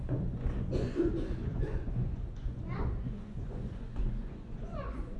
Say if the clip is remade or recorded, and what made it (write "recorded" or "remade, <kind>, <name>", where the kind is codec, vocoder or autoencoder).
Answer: remade, vocoder, Vocos